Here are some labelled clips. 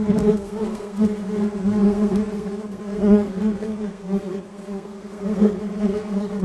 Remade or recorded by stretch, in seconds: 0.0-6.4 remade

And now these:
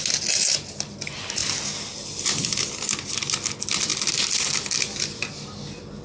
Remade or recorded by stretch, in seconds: 0.0-6.0 recorded

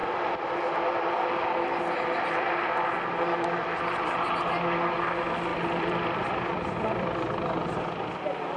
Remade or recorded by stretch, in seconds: 0.0-5.5 recorded; 5.5-7.3 remade; 7.3-8.6 recorded

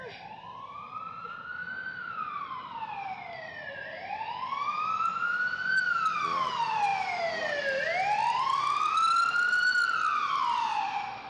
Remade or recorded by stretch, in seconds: 0.0-11.3 recorded

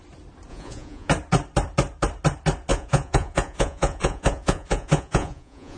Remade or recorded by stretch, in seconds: 0.0-0.5 recorded; 0.5-1.1 remade; 1.1-2.7 recorded; 2.7-5.8 remade